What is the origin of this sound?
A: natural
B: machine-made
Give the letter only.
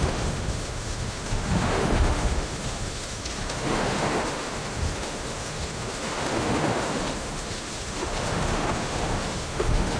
B